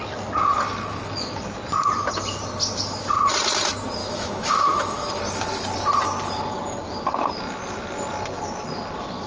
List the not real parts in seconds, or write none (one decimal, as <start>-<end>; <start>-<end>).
4.0-5.2